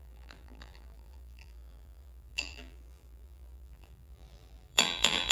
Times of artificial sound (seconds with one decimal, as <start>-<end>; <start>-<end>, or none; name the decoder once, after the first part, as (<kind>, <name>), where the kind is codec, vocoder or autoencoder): 0.0-5.3 (vocoder, BigVGAN v2)